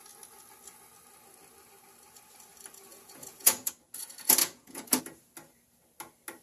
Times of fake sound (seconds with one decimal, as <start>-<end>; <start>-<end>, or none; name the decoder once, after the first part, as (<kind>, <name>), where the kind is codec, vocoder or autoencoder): 2.9-3.7 (vocoder, Vocos); 4.4-5.0